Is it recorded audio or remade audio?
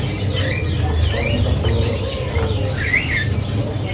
recorded